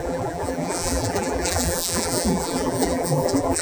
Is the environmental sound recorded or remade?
remade